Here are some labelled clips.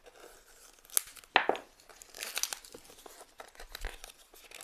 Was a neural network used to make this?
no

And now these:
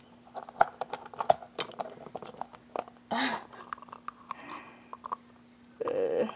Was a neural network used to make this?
no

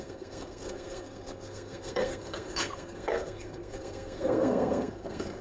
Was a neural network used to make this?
yes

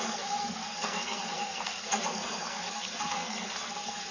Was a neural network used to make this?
yes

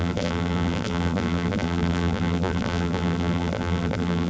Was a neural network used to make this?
yes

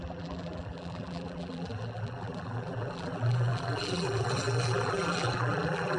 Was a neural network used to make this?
yes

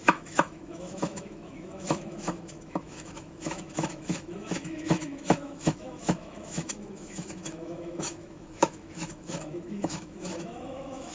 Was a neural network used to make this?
yes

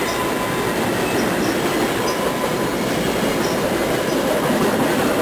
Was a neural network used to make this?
no